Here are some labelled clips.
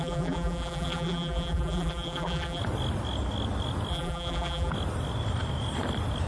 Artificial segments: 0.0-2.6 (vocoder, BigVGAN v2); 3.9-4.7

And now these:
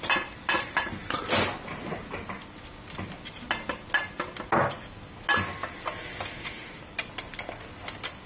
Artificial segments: none

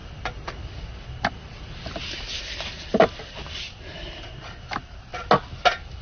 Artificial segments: none

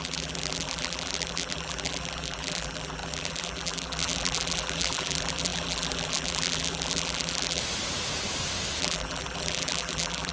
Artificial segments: 0.0-7.6 (vocoder, BigVGAN v2); 8.8-10.3

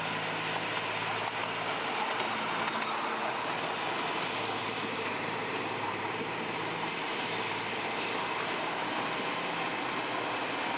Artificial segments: 1.4-1.9 (vocoder, BigVGAN v2); 4.6-8.3